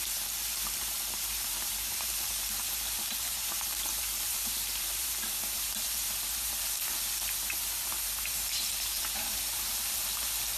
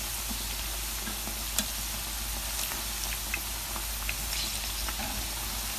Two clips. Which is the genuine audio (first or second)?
second